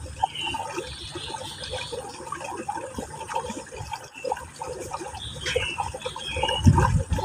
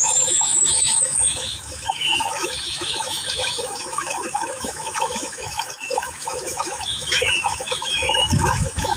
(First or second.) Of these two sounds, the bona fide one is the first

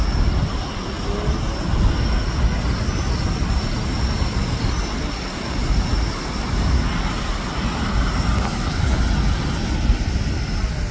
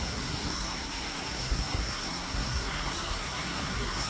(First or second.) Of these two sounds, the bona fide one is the first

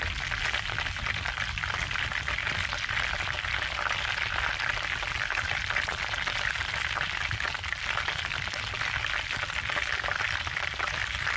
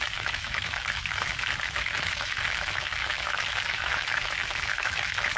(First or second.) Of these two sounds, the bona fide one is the first